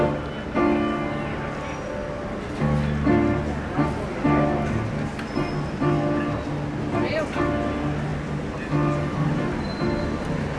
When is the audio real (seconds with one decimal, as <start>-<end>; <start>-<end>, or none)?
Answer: 0.0-10.6